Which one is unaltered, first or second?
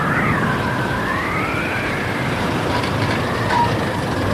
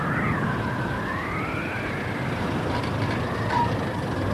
second